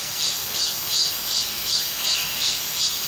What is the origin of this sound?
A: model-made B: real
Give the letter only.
A